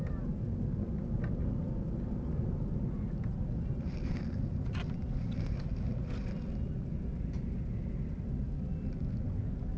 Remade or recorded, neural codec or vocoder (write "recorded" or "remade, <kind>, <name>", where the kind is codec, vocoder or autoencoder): recorded